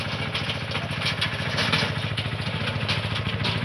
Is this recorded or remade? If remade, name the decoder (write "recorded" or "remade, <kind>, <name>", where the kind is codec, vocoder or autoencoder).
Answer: recorded